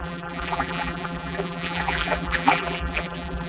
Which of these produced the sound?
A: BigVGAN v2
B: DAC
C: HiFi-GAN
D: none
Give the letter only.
A